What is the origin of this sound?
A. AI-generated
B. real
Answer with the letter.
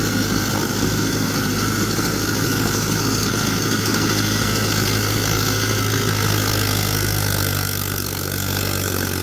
A